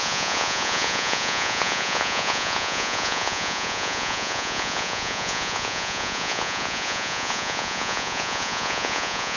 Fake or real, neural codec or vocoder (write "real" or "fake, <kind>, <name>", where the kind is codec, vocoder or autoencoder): fake, vocoder, Vocos